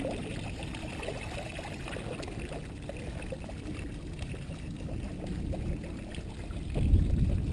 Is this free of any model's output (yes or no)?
yes